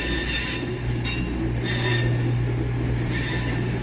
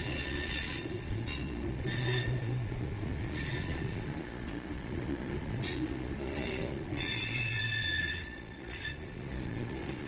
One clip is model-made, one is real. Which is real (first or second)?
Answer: first